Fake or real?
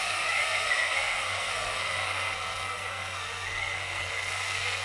fake